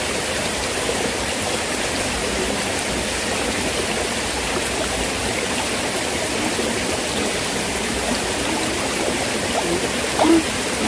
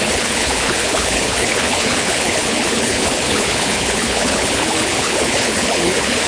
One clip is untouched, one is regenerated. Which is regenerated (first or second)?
second